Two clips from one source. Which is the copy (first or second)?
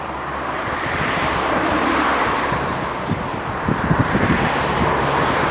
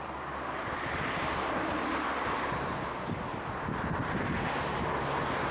first